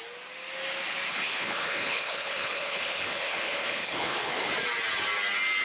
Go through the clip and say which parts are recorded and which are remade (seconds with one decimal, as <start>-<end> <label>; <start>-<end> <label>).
0.0-1.1 recorded; 1.1-4.5 remade; 4.5-5.6 recorded